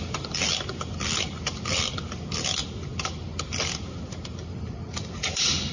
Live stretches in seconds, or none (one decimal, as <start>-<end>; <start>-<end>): 0.0-5.7